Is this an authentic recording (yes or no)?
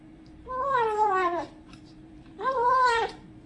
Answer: no